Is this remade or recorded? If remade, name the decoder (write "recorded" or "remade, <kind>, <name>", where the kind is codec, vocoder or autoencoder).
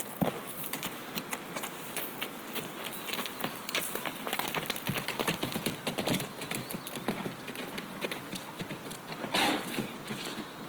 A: recorded